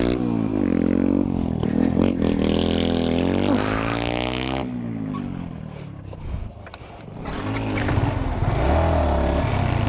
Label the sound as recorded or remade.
recorded